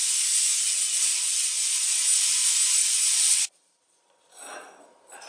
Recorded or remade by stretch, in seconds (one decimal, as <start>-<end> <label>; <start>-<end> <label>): 0.0-0.6 recorded; 0.6-1.4 remade; 1.4-3.1 recorded; 3.1-5.3 remade